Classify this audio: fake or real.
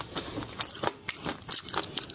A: real